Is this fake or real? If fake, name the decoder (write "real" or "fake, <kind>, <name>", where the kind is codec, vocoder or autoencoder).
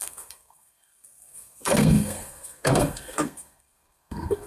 fake, codec, SNAC